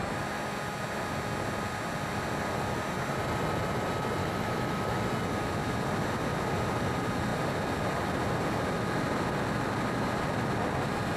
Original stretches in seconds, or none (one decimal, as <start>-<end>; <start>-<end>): 0.0-4.2; 5.0-11.2